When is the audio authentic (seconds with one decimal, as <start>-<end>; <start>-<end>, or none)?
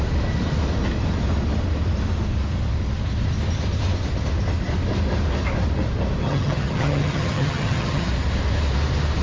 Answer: 0.0-6.2; 8.1-9.2